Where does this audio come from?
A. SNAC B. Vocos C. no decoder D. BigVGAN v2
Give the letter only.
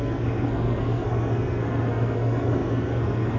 A